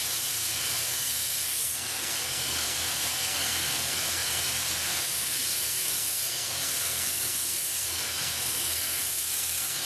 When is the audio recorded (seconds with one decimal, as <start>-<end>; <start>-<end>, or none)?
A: none